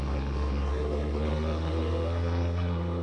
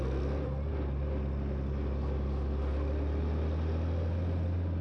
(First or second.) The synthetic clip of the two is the first